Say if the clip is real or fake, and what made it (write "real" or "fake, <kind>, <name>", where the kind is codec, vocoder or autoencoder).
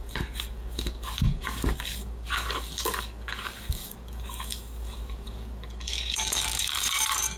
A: fake, codec, DAC